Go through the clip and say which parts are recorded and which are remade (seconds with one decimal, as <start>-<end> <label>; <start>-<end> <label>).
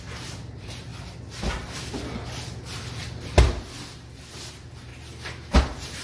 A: 0.0-0.9 remade; 0.9-4.5 recorded; 4.5-4.9 remade; 4.9-5.6 recorded; 5.6-6.0 remade